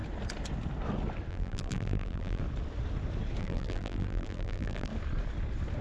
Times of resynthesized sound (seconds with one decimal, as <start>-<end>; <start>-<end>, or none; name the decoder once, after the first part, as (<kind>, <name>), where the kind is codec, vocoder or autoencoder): 1.3-2.4 (vocoder, BigVGAN v2); 3.4-4.9